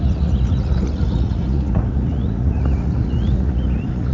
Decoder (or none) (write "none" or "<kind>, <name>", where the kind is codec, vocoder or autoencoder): vocoder, Vocos